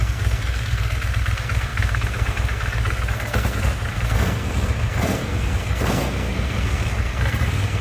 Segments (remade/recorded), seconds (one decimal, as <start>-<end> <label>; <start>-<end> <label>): 0.0-7.8 remade